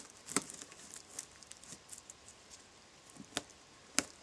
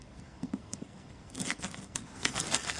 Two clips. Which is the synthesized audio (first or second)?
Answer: second